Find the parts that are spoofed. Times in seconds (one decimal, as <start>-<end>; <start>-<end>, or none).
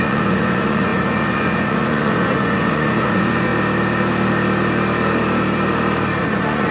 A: 0.0-3.5; 6.2-6.7